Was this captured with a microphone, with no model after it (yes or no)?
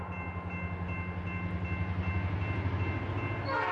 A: yes